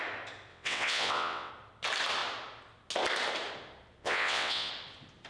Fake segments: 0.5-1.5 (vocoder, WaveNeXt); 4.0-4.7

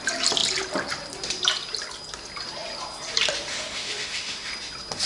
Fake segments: 3.5-4.5 (autoencoder, DAC-VAE)

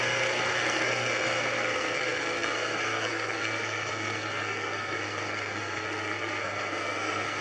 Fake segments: 0.0-7.4 (codec, SNAC)

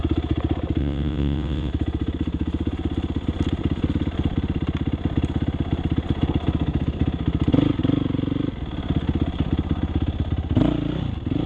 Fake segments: 0.8-1.7 (vocoder, WaveNeXt)